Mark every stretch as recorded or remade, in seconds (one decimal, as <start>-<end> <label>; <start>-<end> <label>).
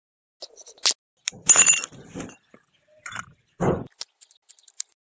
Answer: 0.0-5.1 recorded